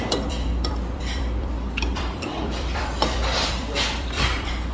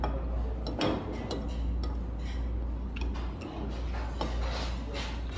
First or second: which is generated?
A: first